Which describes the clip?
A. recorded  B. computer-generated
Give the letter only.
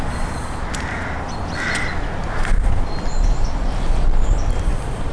A